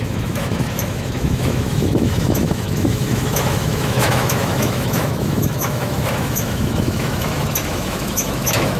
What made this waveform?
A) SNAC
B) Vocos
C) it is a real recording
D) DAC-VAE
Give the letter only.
D